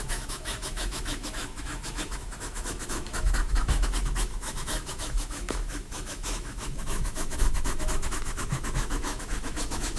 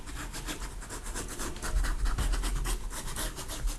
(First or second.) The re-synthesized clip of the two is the first